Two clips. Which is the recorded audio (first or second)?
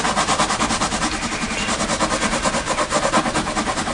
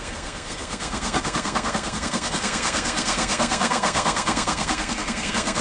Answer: first